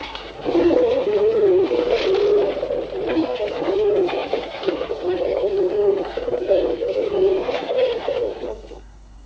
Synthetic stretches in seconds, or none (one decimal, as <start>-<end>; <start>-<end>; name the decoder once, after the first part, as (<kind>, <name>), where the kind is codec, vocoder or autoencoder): 0.0-2.0 (codec, SNAC); 3.1-9.3